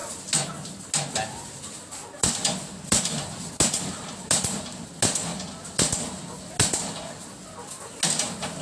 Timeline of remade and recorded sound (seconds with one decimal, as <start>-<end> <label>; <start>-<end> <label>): 0.0-8.6 recorded